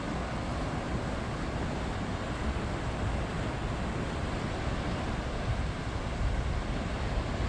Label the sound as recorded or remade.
recorded